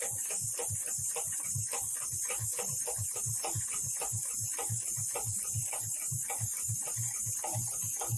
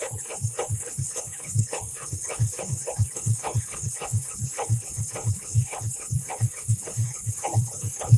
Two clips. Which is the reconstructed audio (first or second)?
second